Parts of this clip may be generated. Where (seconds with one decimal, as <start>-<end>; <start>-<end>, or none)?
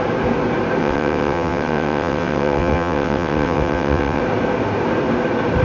0.8-4.2